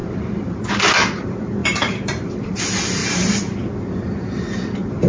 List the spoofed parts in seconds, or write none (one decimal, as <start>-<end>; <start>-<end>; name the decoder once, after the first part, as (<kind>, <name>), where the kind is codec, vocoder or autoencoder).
0.0-0.6 (vocoder, BigVGAN v2); 1.6-2.6; 3.0-3.6